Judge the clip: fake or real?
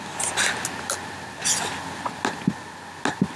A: real